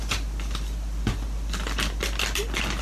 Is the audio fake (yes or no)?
no